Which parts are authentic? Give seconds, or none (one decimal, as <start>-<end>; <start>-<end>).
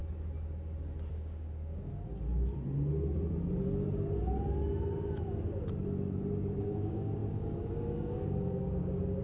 0.0-1.1; 1.9-6.6